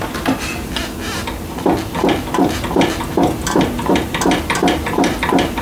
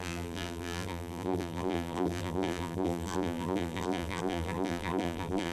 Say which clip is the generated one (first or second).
second